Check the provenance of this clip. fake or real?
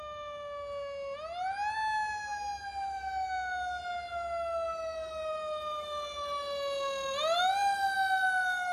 real